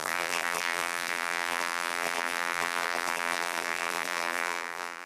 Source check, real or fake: fake